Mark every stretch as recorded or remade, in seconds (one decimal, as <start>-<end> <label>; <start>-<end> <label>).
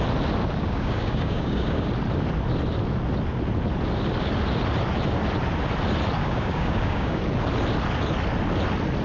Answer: 0.0-0.6 recorded; 0.6-1.9 remade; 1.9-6.2 recorded; 6.2-7.2 remade; 7.2-9.0 recorded